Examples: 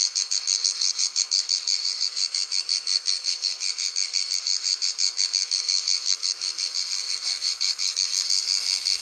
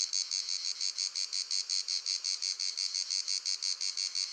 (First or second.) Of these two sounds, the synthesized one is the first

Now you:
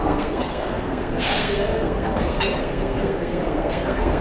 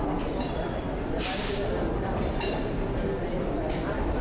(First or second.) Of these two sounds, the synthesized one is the first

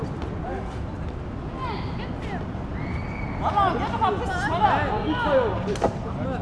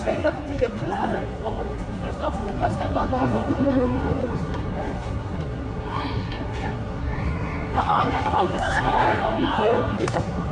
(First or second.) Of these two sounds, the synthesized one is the second